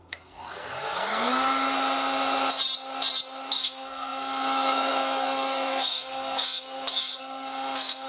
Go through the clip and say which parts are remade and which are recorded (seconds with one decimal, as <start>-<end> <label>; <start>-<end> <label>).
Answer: 0.0-1.3 remade; 1.3-3.5 recorded; 3.5-8.1 remade